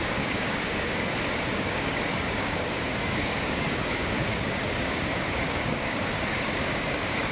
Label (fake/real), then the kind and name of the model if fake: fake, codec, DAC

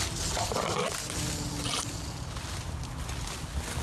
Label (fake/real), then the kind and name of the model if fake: real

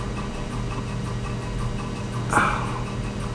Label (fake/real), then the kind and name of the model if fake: real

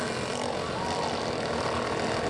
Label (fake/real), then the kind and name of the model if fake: real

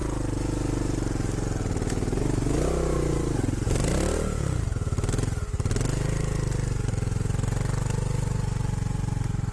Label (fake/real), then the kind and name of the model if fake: real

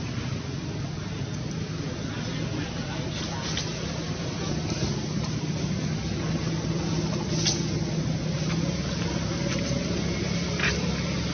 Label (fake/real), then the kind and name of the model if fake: real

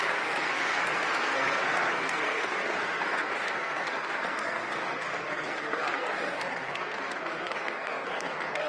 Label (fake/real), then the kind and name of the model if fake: fake, codec, SNAC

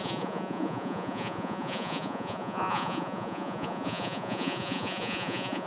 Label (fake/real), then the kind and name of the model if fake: fake, vocoder, Vocos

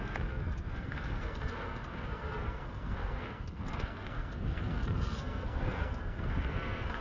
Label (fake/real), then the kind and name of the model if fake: fake, codec, SNAC